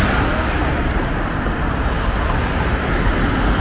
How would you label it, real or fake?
real